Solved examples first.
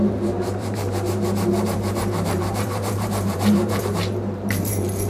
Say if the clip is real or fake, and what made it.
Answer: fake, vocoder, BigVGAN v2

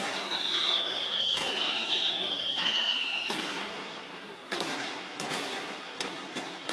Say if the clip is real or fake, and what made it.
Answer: fake, codec, SNAC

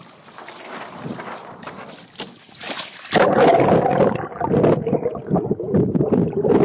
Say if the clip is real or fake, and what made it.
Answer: real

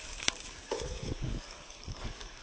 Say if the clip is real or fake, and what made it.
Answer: fake, codec, DAC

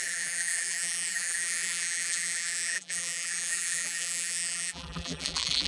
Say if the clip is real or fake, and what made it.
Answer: fake, vocoder, BigVGAN v2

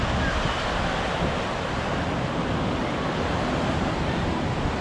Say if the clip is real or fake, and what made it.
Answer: real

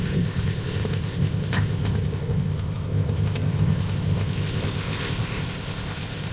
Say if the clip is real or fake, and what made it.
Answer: fake, codec, ZipCodec